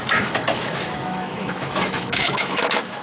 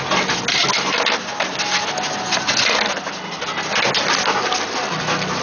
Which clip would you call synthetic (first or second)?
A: first